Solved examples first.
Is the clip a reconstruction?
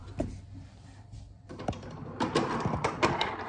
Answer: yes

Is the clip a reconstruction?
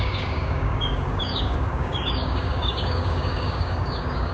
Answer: yes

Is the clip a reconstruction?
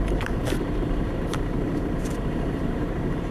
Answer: yes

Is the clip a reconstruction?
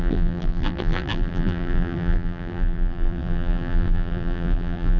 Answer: yes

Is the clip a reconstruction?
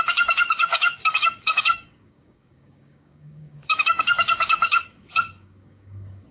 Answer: yes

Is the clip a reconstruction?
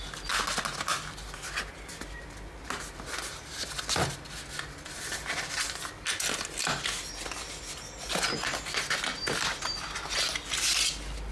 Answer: no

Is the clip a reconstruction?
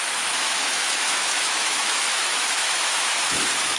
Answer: yes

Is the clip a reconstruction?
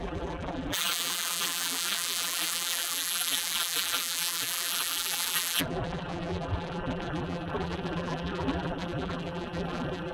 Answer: yes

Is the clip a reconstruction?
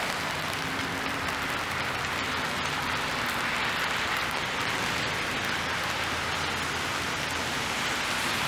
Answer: no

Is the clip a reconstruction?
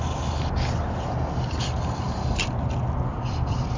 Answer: no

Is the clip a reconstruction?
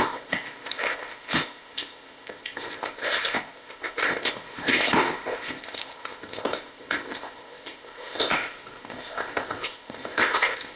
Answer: yes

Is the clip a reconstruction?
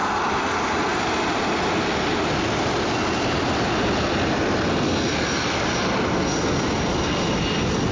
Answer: no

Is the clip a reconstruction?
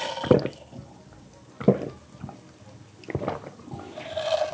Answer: no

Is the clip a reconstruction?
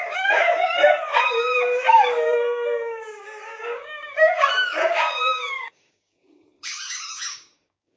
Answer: yes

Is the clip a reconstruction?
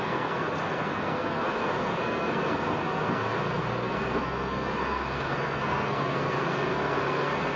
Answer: yes